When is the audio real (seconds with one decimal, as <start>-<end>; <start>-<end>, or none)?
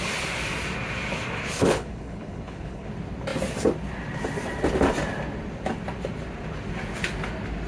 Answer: 0.0-1.4; 2.9-7.7